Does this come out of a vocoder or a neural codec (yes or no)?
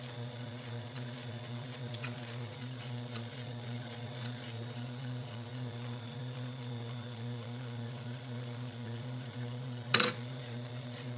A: yes